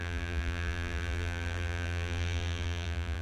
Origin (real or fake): fake